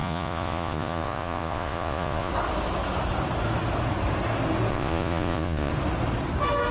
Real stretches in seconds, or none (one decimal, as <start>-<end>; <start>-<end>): 2.3-4.7; 5.7-6.7